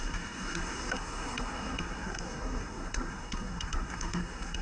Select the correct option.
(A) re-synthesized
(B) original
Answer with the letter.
A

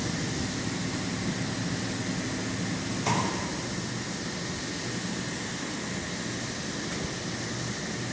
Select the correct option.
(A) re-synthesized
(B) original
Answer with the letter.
B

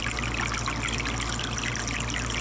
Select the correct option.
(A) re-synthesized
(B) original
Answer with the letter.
B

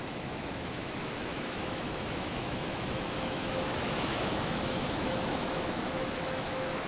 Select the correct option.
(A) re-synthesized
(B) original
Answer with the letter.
A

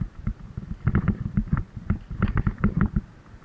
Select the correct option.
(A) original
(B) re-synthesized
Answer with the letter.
A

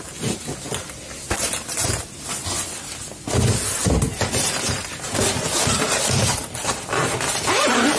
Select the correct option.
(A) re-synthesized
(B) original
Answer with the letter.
B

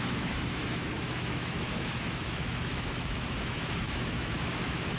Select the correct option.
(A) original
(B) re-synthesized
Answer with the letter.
B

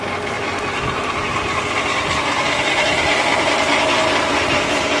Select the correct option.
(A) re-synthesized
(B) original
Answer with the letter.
A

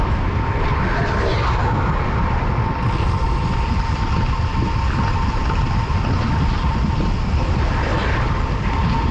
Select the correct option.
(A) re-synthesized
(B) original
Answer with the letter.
B